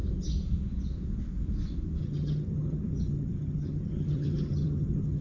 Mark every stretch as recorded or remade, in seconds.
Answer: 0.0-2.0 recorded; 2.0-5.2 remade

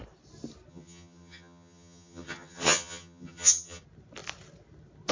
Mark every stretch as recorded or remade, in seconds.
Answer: 0.0-0.7 recorded; 0.7-3.8 remade; 3.8-5.1 recorded

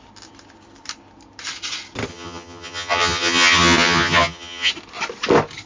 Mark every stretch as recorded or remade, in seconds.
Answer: 0.0-2.1 recorded; 2.1-4.7 remade; 4.7-5.7 recorded

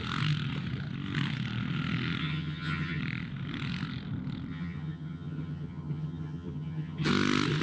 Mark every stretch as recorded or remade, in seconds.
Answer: 0.0-2.2 recorded; 2.2-3.0 remade; 3.0-4.5 recorded; 4.5-7.1 remade; 7.1-7.6 recorded

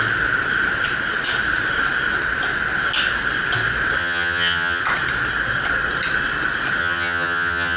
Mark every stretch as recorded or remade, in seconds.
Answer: 0.0-4.0 recorded; 4.0-4.8 remade; 4.8-6.8 recorded; 6.8-7.8 remade

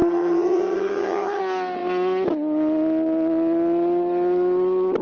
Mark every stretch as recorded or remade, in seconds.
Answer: 0.0-1.4 remade; 1.4-5.0 recorded